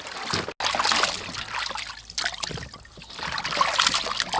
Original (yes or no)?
yes